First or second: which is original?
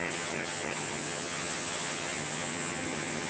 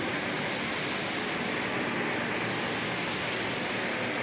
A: second